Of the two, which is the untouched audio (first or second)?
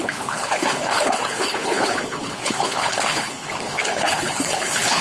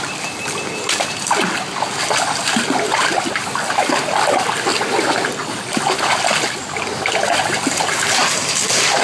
second